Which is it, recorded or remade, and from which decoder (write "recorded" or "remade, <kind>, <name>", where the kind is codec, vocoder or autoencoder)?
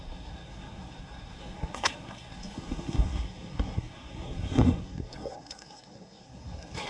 remade, codec, SNAC